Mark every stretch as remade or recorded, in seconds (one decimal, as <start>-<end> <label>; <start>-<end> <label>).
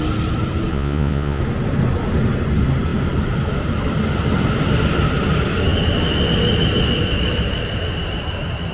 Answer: 0.0-0.7 recorded; 0.7-1.4 remade; 1.4-8.7 recorded